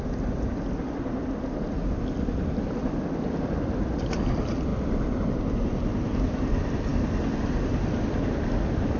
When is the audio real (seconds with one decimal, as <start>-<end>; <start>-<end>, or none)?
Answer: 0.0-9.0